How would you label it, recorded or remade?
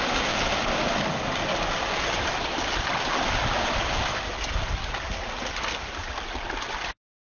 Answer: recorded